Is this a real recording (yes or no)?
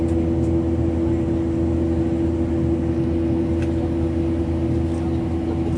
yes